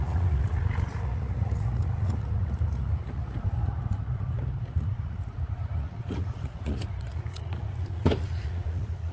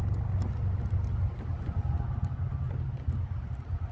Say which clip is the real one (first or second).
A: second